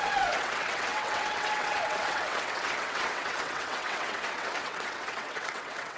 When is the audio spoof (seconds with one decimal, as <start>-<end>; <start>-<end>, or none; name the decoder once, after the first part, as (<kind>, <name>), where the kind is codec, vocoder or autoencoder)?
0.0-6.0 (vocoder, WaveNeXt)